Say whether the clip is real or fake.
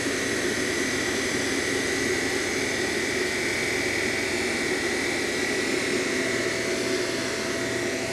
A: real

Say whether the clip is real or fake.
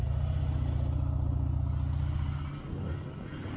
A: real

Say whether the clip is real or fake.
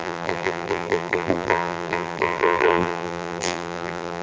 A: fake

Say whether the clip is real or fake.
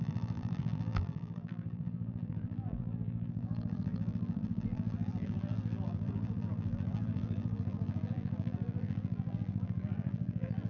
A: fake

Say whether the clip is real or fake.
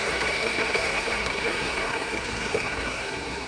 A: fake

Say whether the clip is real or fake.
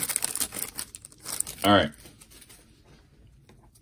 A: real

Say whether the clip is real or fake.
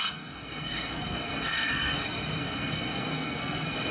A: fake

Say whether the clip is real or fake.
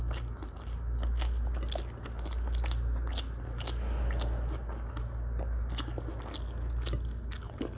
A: real